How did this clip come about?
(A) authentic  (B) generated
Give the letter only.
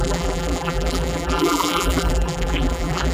B